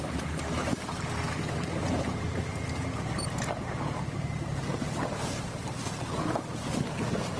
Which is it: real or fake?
fake